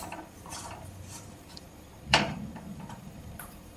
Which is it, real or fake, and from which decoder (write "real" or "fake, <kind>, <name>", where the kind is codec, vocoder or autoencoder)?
fake, vocoder, BigVGAN v2